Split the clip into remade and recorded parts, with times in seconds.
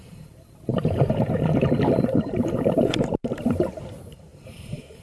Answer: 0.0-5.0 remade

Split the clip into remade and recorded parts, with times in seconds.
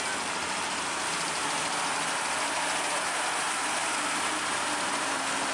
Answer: 0.0-3.8 recorded; 3.8-4.8 remade; 4.8-5.5 recorded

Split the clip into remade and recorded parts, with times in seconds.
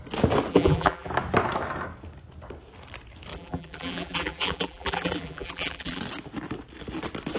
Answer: 0.0-0.5 recorded; 0.5-1.1 remade; 1.1-3.3 recorded; 3.3-6.0 remade; 6.0-7.4 recorded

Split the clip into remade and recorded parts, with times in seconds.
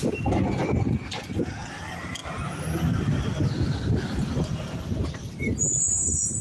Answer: 0.0-6.4 recorded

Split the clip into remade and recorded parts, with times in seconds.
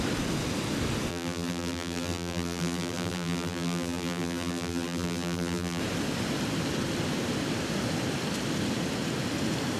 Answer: 0.0-1.1 recorded; 1.1-5.8 remade; 5.8-9.8 recorded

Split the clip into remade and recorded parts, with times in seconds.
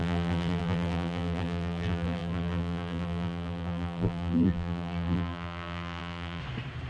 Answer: 0.0-6.4 remade; 6.4-6.9 recorded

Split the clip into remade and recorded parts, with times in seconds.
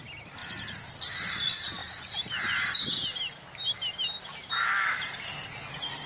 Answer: 0.0-1.8 recorded; 1.8-2.8 remade; 2.8-6.1 recorded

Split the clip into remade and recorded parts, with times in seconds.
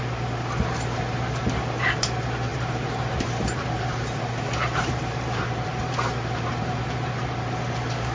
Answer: 0.0-2.5 recorded; 2.5-6.8 remade; 6.8-8.1 recorded